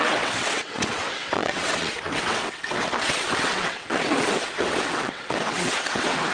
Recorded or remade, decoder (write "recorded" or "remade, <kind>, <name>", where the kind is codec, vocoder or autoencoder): remade, vocoder, WaveNeXt